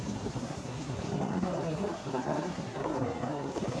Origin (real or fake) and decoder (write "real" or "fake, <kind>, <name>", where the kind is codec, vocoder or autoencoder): fake, codec, SNAC